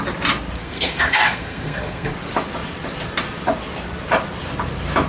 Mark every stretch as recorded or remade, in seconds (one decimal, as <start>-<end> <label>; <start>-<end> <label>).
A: 0.0-0.6 recorded; 0.6-2.1 remade; 2.1-5.1 recorded